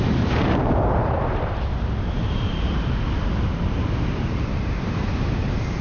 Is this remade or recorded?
remade